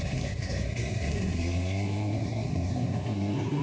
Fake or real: fake